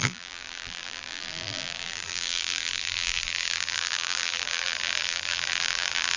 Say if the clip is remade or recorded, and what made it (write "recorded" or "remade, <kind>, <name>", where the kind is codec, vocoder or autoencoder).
remade, vocoder, BigVGAN v2